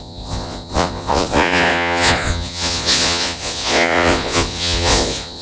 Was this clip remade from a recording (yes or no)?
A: yes